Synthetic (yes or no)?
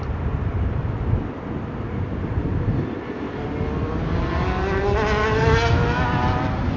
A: no